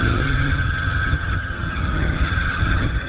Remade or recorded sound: remade